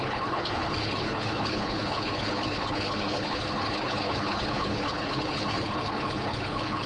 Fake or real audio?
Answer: fake